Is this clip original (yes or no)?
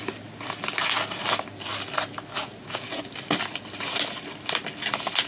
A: yes